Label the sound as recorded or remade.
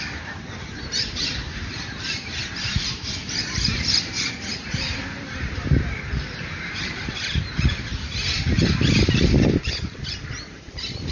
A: remade